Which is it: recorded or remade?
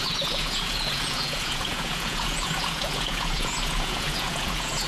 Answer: remade